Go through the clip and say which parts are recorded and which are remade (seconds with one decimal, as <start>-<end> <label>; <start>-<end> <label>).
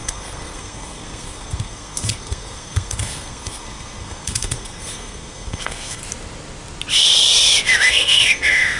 0.0-6.0 remade; 6.0-7.9 recorded; 7.9-8.8 remade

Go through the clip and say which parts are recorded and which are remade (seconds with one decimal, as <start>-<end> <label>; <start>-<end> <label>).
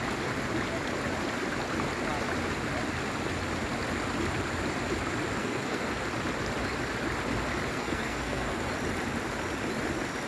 0.0-5.4 recorded; 5.4-6.0 remade; 6.0-7.7 recorded; 7.7-8.7 remade; 8.7-10.3 recorded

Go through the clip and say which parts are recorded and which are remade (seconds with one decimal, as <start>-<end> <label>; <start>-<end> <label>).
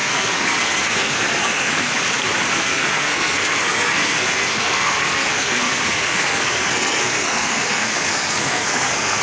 0.0-1.9 remade; 1.9-2.5 recorded; 2.5-9.2 remade